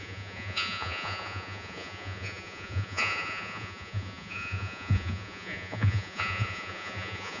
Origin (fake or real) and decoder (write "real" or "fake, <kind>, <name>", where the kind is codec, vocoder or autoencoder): fake, vocoder, Vocos